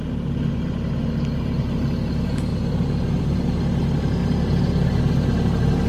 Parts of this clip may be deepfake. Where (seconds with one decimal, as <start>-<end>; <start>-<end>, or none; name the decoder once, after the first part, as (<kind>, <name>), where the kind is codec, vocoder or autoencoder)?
2.5-3.2 (vocoder, BigVGAN v2); 4.2-5.0